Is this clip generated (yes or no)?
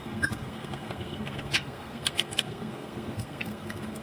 yes